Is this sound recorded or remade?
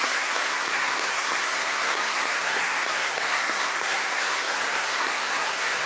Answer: remade